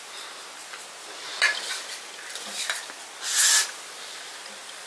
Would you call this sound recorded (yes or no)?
yes